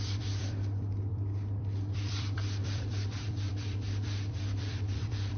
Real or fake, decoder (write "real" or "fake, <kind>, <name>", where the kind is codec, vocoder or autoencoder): fake, vocoder, BigVGAN v2